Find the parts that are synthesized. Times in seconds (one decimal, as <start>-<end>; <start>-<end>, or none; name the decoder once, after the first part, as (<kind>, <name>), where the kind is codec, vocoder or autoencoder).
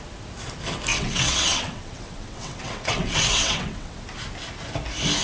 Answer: 0.9-4.0 (vocoder, WaveNeXt)